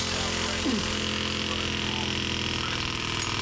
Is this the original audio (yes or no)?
yes